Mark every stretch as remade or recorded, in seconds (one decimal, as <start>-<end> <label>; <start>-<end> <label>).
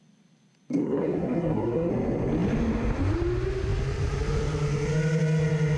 0.0-0.8 recorded; 0.8-1.9 remade; 1.9-5.8 recorded